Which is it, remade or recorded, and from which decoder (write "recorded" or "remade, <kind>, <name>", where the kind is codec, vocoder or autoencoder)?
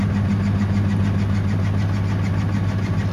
recorded